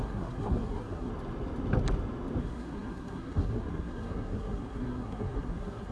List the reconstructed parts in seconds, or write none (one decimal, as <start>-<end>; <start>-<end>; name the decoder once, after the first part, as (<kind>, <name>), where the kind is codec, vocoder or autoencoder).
0.0-1.1 (codec, SNAC); 2.4-5.9